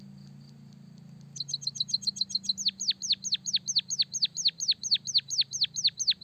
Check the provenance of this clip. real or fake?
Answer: real